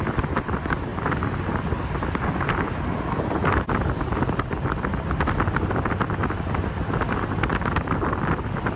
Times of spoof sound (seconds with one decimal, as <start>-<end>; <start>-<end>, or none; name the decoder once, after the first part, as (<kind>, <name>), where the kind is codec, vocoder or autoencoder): 0.9-2.5 (vocoder, BigVGAN v2); 3.4-7.5